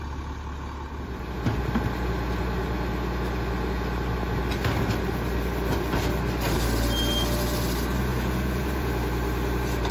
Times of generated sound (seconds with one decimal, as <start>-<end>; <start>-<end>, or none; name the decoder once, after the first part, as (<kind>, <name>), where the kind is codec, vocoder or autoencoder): 8.1-8.9 (vocoder, Vocos)